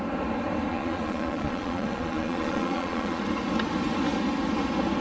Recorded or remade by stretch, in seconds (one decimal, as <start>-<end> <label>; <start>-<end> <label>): 0.0-0.7 recorded; 0.7-3.2 remade; 3.2-5.0 recorded